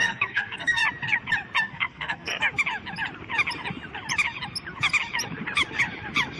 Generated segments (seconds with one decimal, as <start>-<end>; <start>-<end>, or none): 0.0-0.8; 1.6-2.3